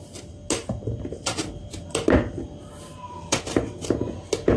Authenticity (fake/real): real